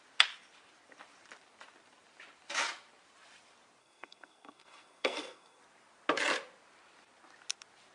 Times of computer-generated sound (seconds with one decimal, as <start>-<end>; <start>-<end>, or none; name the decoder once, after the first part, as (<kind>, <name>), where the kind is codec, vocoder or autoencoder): 3.8-5.6 (codec, SNAC)